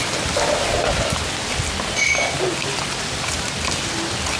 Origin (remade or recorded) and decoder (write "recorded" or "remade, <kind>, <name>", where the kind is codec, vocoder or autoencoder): recorded